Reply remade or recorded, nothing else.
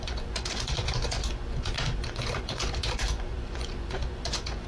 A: remade